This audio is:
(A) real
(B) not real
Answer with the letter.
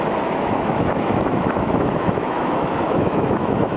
B